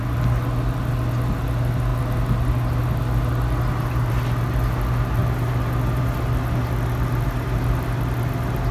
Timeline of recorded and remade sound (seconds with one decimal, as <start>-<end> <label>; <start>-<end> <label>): 0.0-8.7 recorded